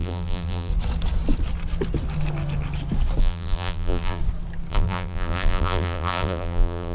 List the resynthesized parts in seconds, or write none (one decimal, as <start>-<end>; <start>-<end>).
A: 0.0-0.7; 3.2-4.2; 4.7-6.9